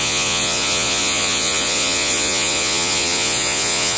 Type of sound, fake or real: fake